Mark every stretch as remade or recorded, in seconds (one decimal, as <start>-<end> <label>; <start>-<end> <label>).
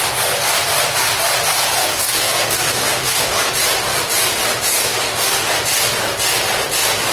0.0-1.9 recorded; 1.9-3.5 remade; 3.5-4.7 recorded; 4.7-5.5 remade; 5.5-7.1 recorded